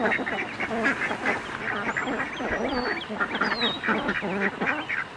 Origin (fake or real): real